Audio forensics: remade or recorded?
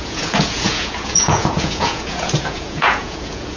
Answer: remade